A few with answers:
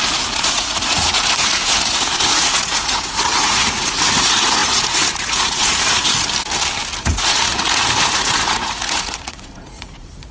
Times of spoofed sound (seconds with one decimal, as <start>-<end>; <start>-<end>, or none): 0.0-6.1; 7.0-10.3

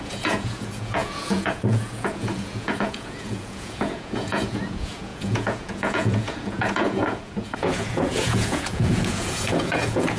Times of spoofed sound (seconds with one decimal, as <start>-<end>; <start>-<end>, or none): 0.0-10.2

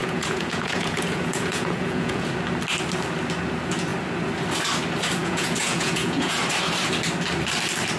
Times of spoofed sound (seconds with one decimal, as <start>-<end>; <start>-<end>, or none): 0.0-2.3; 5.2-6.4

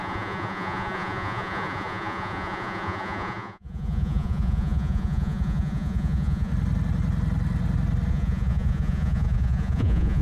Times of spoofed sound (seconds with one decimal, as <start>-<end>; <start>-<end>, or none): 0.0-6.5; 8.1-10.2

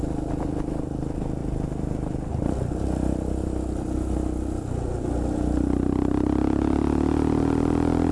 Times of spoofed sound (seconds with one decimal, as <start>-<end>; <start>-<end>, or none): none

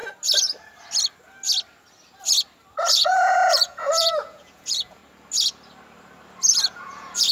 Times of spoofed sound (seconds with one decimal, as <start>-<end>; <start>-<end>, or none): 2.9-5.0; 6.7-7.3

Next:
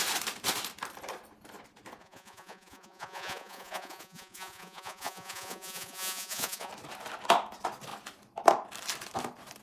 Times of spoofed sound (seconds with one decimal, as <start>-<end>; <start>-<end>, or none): 2.0-6.7

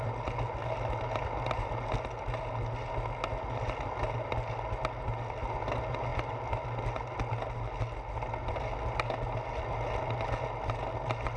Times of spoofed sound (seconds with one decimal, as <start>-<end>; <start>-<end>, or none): none